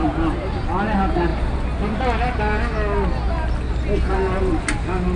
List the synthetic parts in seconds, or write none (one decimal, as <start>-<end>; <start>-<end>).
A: none